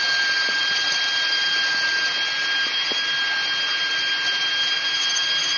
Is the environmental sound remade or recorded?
recorded